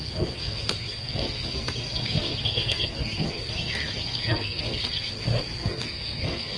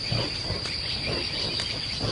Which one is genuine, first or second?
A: second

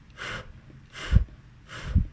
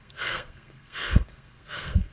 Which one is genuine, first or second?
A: first